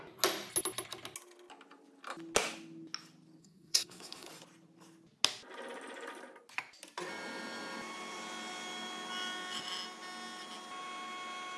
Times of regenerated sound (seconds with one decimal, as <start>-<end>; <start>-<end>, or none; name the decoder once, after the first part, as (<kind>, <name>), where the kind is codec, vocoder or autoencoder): 3.4-4.3 (codec, SNAC)